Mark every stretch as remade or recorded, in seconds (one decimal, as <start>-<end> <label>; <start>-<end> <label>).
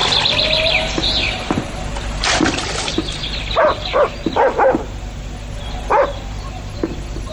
0.0-1.5 remade; 1.5-7.3 recorded